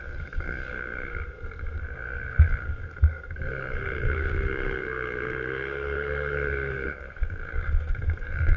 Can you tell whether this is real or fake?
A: fake